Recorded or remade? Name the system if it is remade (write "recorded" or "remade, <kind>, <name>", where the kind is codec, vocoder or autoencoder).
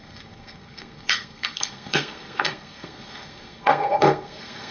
remade, codec, SNAC